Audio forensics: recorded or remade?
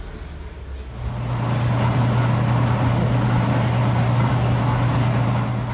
recorded